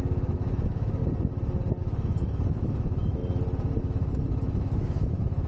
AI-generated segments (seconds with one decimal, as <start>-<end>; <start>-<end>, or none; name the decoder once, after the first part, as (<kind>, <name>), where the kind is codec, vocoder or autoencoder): 0.0-1.0 (autoencoder, DAC-VAE); 1.8-3.2; 3.8-5.5

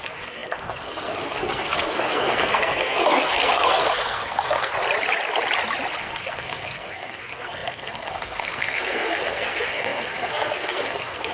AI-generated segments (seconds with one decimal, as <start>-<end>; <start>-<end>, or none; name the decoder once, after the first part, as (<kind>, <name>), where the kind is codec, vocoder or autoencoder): 0.0-4.7 (codec, SNAC); 6.0-11.3

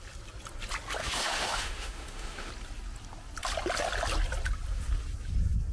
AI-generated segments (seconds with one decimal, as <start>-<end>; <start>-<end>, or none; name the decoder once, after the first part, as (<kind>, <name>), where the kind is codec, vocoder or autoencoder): 1.0-2.5 (autoencoder, DAC-VAE)